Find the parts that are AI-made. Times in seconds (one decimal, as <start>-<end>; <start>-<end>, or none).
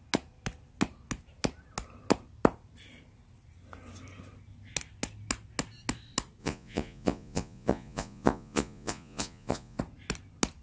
6.4-9.8